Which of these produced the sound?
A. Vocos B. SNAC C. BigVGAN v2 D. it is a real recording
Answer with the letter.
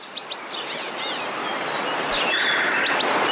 D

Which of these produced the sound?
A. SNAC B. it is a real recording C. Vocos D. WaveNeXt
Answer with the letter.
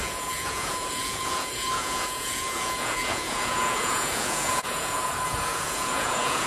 C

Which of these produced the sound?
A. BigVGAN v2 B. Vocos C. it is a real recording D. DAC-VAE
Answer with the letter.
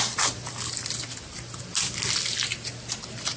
C